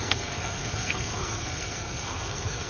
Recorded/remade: remade